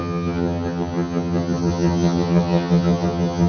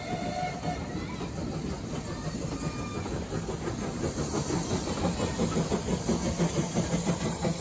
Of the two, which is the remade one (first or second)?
first